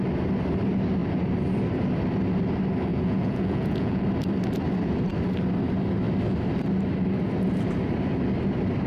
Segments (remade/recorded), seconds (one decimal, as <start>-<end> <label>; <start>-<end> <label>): 0.0-2.9 recorded; 2.9-4.0 remade; 4.0-8.9 recorded

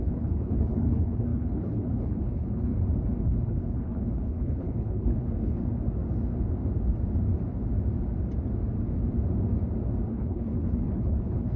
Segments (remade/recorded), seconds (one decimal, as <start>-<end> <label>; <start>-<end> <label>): 0.0-2.7 remade; 2.7-3.2 recorded; 3.2-5.6 remade; 5.6-10.1 recorded; 10.1-11.6 remade